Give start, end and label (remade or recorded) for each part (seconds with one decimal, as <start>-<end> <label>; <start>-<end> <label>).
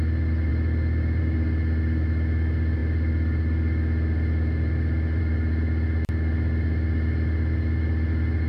0.0-8.5 recorded